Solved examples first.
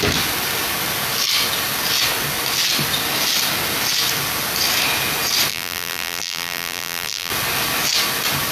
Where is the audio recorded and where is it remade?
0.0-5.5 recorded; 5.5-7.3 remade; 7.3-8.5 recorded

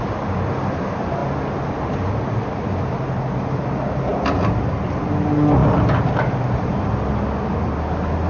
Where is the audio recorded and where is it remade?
0.0-5.6 recorded; 5.6-6.7 remade; 6.7-8.3 recorded

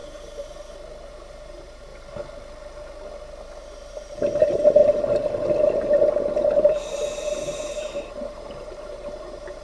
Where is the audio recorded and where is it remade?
0.0-1.1 recorded; 1.1-1.9 remade; 1.9-3.6 recorded; 3.6-4.8 remade; 4.8-6.6 recorded; 6.6-9.6 remade